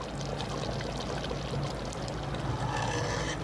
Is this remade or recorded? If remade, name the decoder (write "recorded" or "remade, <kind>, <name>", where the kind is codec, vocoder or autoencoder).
recorded